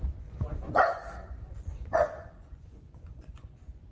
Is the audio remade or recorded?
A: remade